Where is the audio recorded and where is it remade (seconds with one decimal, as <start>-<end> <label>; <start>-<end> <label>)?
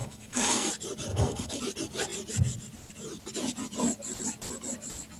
0.0-0.7 remade; 0.7-1.1 recorded; 1.1-1.6 remade; 1.6-5.2 recorded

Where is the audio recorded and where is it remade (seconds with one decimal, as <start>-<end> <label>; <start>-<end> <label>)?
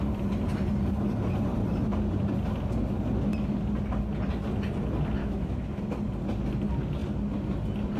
0.0-5.2 recorded; 5.2-5.8 remade; 5.8-8.0 recorded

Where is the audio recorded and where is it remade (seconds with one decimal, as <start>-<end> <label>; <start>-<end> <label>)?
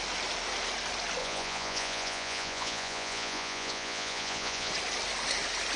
0.0-1.2 recorded; 1.2-4.7 remade; 4.7-5.8 recorded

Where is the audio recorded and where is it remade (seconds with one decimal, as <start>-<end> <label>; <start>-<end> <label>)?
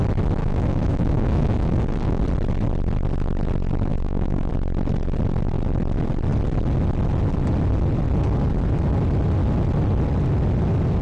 0.0-0.4 recorded; 0.4-2.2 remade; 2.2-3.9 recorded; 3.9-4.5 remade; 4.5-11.0 recorded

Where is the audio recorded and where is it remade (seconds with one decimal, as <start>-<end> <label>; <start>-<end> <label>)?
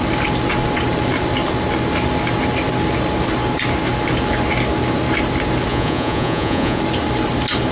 0.0-5.7 recorded; 5.7-6.8 remade; 6.8-7.7 recorded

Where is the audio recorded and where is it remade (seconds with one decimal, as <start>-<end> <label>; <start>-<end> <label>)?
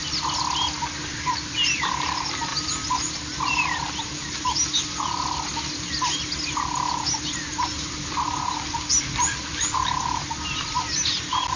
0.0-2.5 recorded; 2.5-3.1 remade; 3.1-11.6 recorded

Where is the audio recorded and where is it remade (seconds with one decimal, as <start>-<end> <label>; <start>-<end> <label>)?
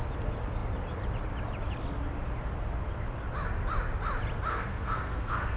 0.0-4.5 recorded; 4.5-5.6 remade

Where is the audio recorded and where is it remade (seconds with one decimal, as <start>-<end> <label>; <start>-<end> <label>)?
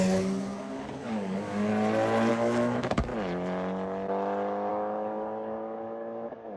0.0-1.7 remade; 1.7-2.3 recorded; 2.3-3.1 remade; 3.1-4.7 recorded; 4.7-6.6 remade